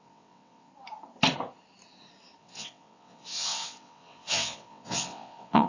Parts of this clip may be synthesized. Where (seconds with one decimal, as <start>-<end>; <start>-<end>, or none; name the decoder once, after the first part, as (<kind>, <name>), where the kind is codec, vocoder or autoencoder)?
0.0-0.7 (vocoder, WaveNeXt); 2.4-5.7